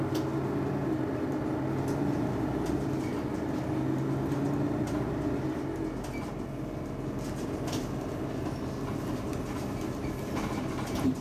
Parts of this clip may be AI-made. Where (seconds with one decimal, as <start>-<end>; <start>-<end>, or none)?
none